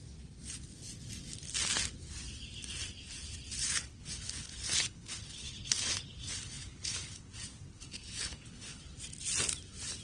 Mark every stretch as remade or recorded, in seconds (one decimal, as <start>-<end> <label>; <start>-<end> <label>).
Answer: 0.0-3.6 recorded; 3.6-8.8 remade; 8.8-10.0 recorded